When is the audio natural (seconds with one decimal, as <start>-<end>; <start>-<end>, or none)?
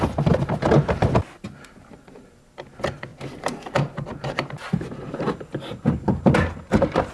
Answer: 0.0-3.1; 5.2-7.1